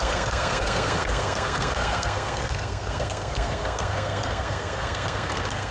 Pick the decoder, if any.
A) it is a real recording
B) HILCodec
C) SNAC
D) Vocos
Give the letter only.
C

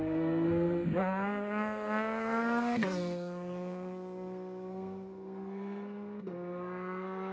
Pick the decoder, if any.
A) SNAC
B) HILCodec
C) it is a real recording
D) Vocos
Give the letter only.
A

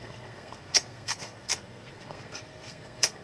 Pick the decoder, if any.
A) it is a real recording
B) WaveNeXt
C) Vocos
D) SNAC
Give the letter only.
D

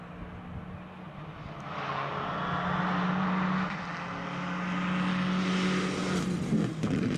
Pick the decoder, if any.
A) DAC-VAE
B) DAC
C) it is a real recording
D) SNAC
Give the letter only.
C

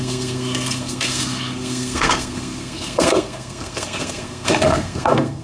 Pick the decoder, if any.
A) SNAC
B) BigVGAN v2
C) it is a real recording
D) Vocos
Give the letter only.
A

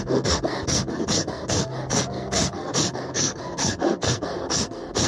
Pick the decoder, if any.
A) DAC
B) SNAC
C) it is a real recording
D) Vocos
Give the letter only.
B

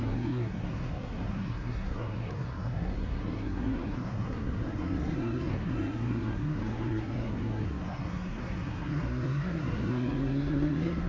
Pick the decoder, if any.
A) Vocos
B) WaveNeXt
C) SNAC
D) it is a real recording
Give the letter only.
C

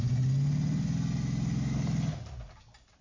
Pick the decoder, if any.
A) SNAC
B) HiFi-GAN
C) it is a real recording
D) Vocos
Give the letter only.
C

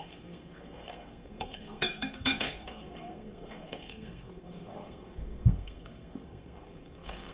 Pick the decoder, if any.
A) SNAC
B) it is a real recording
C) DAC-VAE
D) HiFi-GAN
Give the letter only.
A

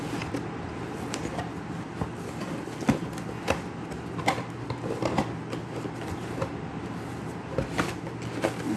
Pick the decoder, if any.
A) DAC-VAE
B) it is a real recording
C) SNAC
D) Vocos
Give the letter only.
B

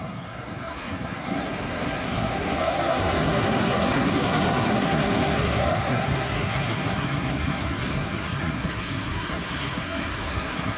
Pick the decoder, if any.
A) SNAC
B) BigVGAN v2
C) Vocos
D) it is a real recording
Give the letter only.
A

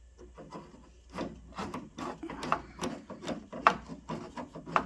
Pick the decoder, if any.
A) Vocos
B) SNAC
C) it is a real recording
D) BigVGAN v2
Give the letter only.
C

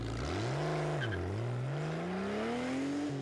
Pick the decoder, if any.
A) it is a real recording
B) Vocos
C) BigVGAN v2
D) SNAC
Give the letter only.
A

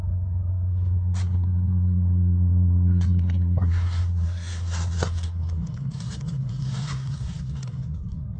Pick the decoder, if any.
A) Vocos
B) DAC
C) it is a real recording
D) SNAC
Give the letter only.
D